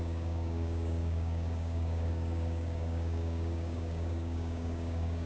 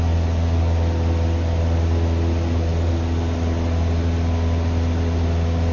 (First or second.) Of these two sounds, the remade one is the first